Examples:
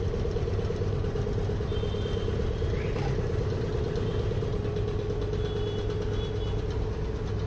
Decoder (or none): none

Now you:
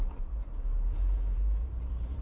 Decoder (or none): vocoder, BigVGAN v2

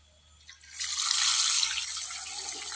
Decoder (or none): none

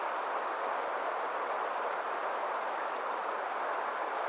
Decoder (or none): vocoder, BigVGAN v2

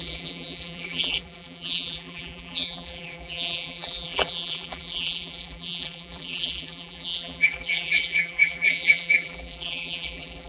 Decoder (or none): vocoder, BigVGAN v2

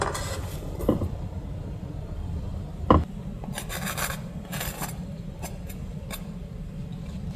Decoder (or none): vocoder, BigVGAN v2